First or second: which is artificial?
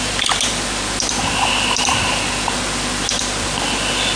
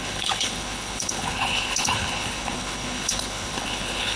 second